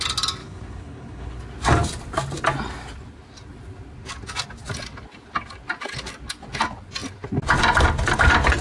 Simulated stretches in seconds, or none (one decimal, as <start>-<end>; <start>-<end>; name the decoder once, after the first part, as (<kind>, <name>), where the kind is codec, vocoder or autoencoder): 0.4-1.4 (codec, HILCodec)